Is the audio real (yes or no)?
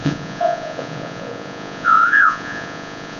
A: no